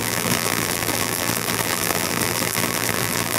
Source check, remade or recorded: remade